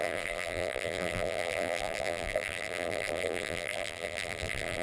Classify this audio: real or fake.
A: fake